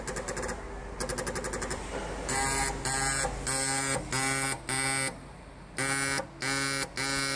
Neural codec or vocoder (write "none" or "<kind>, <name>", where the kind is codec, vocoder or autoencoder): none